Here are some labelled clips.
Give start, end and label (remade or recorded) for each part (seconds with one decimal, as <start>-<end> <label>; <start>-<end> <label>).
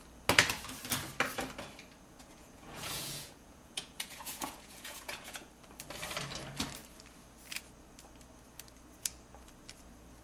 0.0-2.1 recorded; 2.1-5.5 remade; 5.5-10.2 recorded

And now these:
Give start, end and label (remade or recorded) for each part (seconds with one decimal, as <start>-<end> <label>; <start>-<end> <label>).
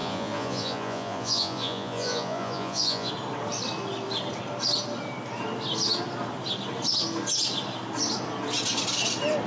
0.0-3.1 remade; 3.1-9.5 recorded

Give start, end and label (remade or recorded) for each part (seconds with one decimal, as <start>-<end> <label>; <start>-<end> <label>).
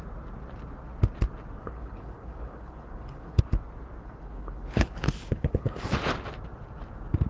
0.0-1.6 recorded; 1.6-3.4 remade; 3.4-4.0 recorded; 4.0-5.9 remade; 5.9-7.3 recorded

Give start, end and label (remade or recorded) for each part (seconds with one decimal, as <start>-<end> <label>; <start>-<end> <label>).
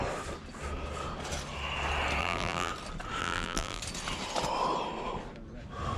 0.0-2.2 recorded; 2.2-2.7 remade; 2.7-3.2 recorded; 3.2-3.8 remade; 3.8-6.0 recorded